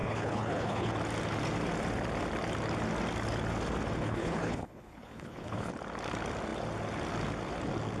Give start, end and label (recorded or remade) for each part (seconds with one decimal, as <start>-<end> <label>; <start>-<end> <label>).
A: 0.0-0.9 remade; 0.9-4.0 recorded; 4.0-5.7 remade; 5.7-8.0 recorded